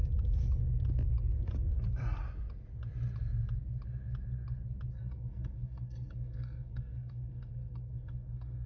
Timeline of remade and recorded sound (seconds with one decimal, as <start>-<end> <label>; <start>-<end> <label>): 0.0-4.9 recorded; 4.9-8.7 remade